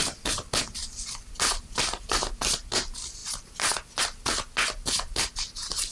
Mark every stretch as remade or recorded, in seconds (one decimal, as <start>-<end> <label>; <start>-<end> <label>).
0.0-5.9 recorded

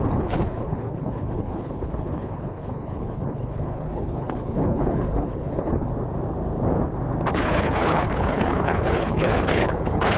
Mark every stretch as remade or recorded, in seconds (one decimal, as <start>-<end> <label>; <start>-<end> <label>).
0.0-5.9 remade; 5.9-7.3 recorded; 7.3-10.2 remade

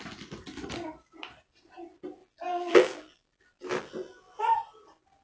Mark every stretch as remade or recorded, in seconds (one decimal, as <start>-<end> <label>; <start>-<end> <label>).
0.0-2.2 recorded; 2.2-4.4 remade; 4.4-5.2 recorded